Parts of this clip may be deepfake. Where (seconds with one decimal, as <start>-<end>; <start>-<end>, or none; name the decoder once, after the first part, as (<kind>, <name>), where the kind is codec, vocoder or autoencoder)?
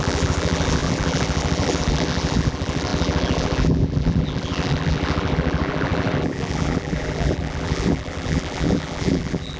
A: 0.0-9.6 (vocoder, BigVGAN v2)